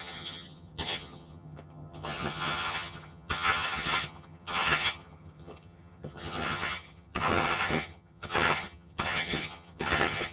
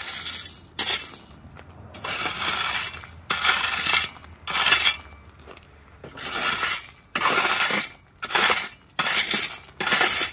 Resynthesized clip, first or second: first